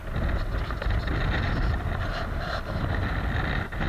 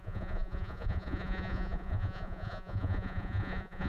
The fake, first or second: second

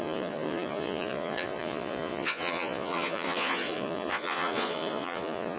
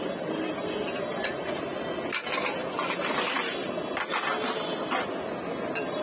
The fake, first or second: first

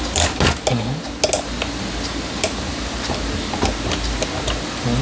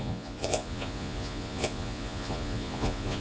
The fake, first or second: second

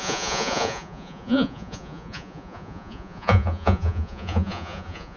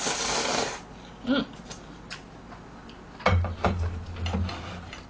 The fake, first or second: first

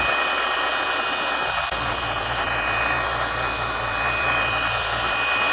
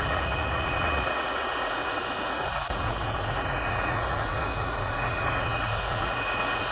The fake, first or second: second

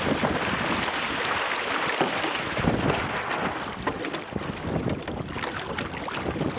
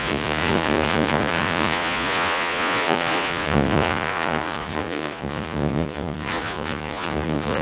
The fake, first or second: second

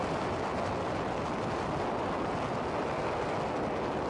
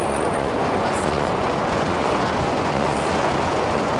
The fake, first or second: second